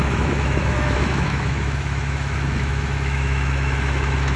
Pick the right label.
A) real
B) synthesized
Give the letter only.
B